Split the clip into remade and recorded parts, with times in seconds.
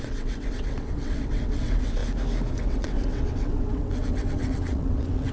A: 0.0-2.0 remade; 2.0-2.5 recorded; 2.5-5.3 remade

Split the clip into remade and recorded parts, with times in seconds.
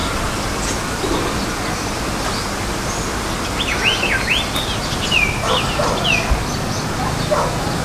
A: 0.0-7.8 recorded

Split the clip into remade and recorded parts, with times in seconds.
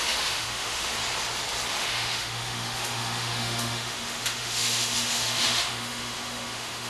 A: 0.0-0.9 remade; 0.9-1.7 recorded; 1.7-6.9 remade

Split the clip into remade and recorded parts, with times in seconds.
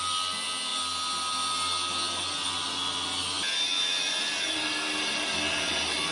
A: 0.0-6.1 recorded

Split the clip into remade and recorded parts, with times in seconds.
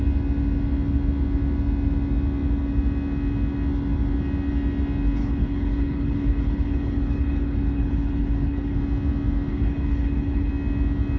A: 0.0-5.2 recorded; 5.2-8.8 remade; 8.8-9.5 recorded; 9.5-10.5 remade; 10.5-11.2 recorded